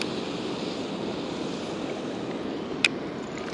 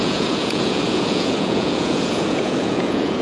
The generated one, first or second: second